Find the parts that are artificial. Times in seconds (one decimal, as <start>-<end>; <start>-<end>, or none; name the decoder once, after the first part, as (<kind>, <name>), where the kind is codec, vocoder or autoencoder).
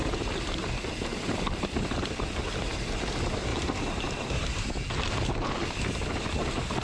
0.0-0.7 (vocoder, BigVGAN v2); 1.1-2.4; 3.5-4.7